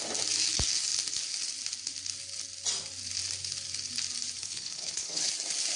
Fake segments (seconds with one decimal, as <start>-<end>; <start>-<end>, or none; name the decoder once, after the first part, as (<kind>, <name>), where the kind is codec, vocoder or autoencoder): 4.4-5.3 (codec, HILCodec)